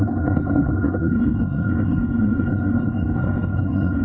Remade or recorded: remade